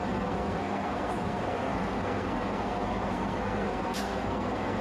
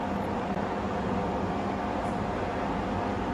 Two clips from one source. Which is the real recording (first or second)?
second